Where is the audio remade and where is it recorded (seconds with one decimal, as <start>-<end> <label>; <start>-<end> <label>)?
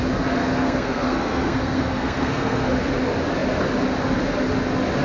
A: 0.0-0.4 recorded; 0.4-2.7 remade; 2.7-5.0 recorded